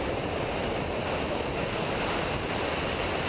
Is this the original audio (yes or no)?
yes